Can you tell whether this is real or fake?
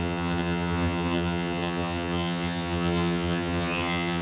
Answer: fake